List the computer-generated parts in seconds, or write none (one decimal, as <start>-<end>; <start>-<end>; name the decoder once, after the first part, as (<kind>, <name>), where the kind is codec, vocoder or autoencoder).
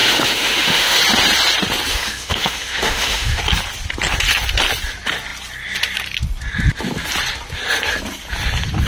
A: 0.0-1.0 (autoencoder, DAC-VAE); 1.9-3.4